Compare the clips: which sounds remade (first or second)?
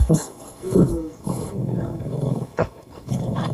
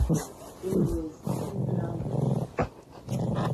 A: first